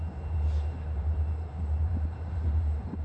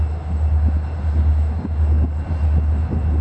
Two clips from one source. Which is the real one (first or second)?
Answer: second